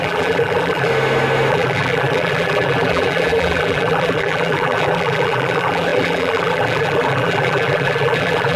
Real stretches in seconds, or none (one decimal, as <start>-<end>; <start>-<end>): 0.9-1.5